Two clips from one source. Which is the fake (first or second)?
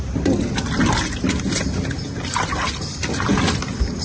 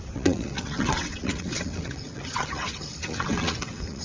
second